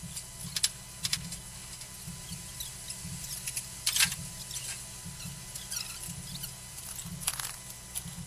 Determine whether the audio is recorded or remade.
recorded